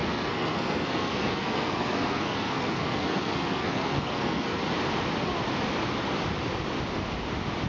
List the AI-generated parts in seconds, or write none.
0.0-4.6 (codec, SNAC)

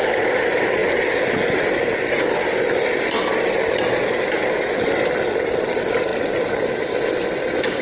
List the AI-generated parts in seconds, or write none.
0.0-0.8 (vocoder, BigVGAN v2); 5.5-6.1; 7.1-7.8